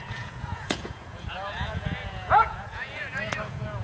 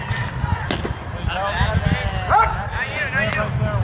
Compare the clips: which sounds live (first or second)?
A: second